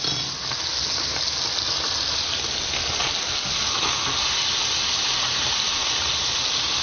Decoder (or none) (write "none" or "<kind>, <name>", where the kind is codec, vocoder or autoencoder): none